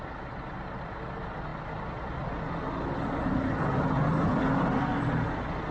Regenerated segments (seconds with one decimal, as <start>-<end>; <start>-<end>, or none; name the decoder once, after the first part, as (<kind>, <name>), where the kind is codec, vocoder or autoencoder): none